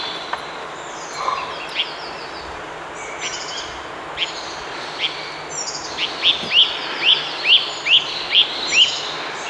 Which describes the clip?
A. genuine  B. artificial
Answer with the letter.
A